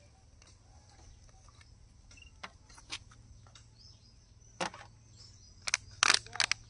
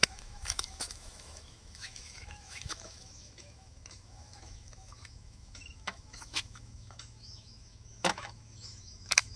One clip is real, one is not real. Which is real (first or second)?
first